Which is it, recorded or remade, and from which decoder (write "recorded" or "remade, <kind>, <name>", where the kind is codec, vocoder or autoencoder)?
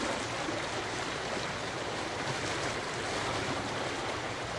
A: recorded